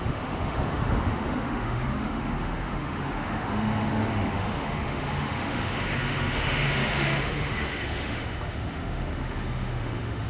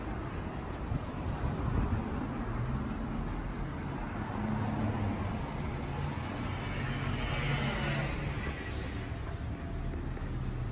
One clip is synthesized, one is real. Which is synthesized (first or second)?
first